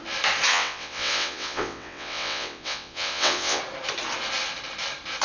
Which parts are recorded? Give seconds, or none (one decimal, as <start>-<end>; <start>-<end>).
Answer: 0.0-0.5; 3.6-5.2